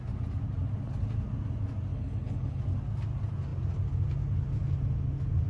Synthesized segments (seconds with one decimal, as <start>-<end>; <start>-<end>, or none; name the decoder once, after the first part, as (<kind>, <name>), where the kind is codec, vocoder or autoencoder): 1.9-2.6 (codec, HILCodec)